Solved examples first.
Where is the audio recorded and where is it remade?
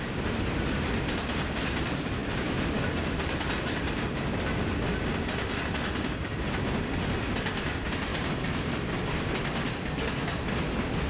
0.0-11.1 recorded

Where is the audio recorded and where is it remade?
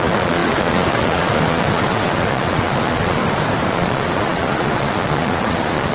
0.0-3.2 remade; 3.2-3.7 recorded; 3.7-5.9 remade